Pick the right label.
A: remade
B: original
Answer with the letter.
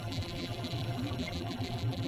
A